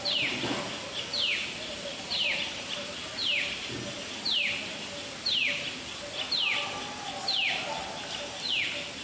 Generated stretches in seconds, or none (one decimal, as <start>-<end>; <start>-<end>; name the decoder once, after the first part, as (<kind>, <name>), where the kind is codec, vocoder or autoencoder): 1.9-2.9 (vocoder, BigVGAN v2)